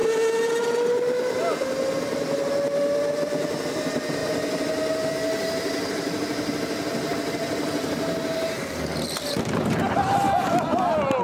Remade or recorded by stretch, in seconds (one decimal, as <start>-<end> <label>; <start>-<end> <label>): 0.0-11.2 recorded